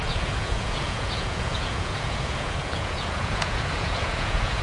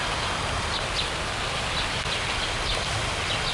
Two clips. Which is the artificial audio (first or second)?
first